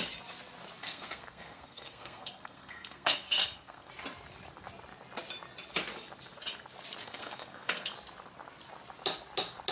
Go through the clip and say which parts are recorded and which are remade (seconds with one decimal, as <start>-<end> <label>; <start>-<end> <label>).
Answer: 0.0-0.8 recorded; 0.8-3.9 remade; 3.9-7.0 recorded; 7.0-7.9 remade; 7.9-9.7 recorded